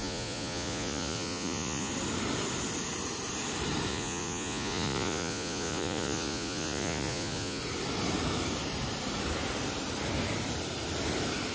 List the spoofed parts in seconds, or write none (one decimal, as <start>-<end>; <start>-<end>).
0.0-1.9; 3.9-7.6